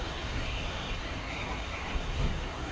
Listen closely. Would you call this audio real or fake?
fake